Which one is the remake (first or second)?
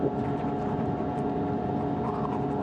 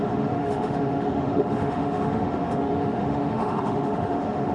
second